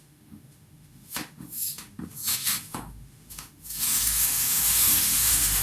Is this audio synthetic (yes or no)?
yes